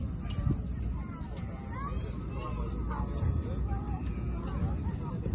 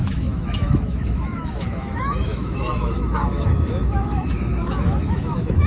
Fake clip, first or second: second